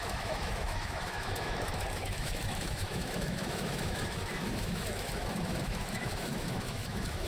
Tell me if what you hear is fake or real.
fake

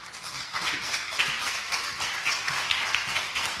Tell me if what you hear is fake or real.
fake